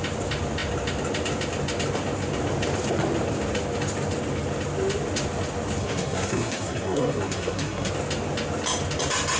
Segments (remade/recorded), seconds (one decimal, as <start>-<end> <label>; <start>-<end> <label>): 0.0-5.8 recorded; 5.8-7.9 remade; 7.9-9.4 recorded